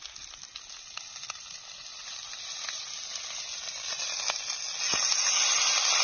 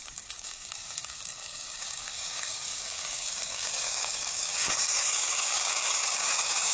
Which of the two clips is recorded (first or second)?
first